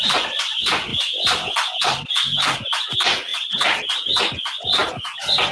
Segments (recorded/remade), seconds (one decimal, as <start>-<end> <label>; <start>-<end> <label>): 0.0-0.9 recorded; 0.9-1.8 remade; 1.8-3.3 recorded; 3.3-3.9 remade; 3.9-5.5 recorded